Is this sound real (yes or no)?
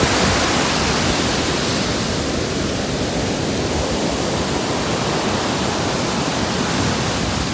yes